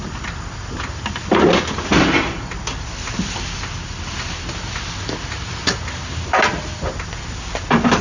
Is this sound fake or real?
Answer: real